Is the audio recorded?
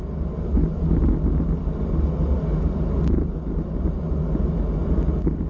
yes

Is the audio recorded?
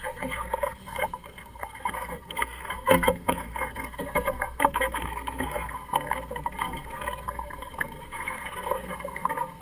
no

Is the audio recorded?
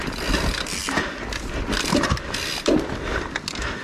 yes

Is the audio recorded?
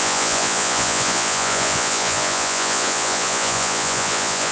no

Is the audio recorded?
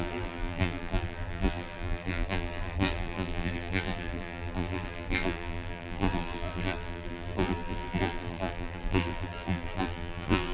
no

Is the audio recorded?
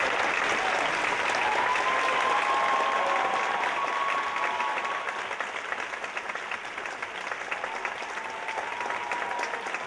yes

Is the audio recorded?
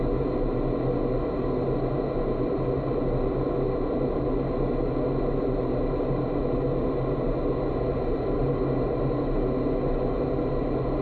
yes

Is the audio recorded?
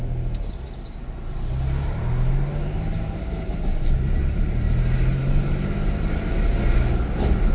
yes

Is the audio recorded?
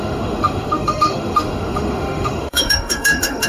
no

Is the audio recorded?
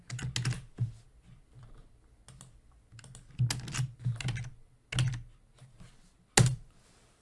yes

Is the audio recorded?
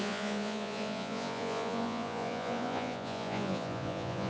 no